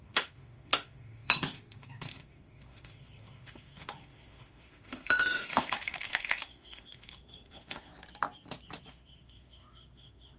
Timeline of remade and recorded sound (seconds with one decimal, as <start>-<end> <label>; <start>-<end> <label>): 0.0-7.9 remade; 7.9-8.9 recorded; 8.9-10.4 remade